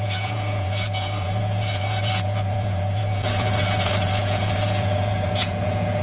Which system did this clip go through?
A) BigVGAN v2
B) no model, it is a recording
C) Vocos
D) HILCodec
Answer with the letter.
C